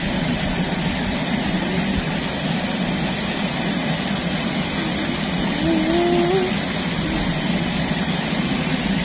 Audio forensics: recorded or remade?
recorded